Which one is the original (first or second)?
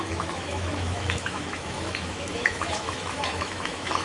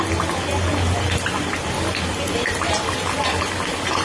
second